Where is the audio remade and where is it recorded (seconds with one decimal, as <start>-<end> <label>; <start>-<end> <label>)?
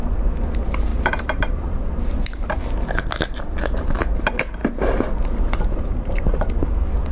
0.0-0.9 recorded; 0.9-2.6 remade; 2.6-5.9 recorded; 5.9-6.6 remade; 6.6-7.1 recorded